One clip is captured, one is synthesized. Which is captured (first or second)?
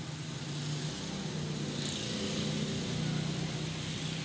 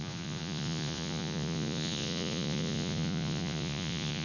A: first